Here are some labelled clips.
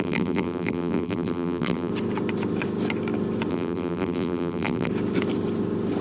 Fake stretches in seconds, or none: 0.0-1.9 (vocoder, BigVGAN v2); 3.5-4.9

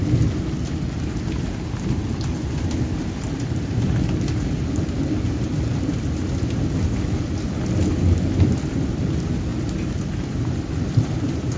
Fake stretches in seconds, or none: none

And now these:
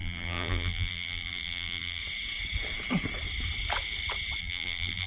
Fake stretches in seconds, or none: 0.0-2.0 (vocoder, BigVGAN v2); 4.4-5.1

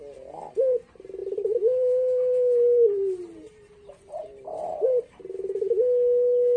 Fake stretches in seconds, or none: 1.2-5.2 (vocoder, BigVGAN v2)

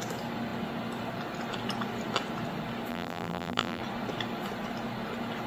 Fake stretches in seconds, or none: 2.9-3.8 (vocoder, BigVGAN v2)

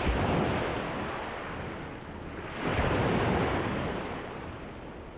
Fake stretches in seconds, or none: 2.7-4.5 (vocoder, BigVGAN v2)

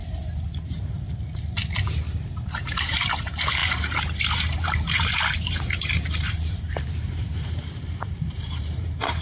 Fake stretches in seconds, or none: 1.2-1.6 (vocoder, BigVGAN v2); 2.2-9.2

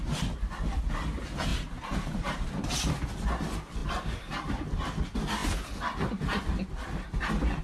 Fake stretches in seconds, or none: 1.5-2.9 (vocoder, BigVGAN v2)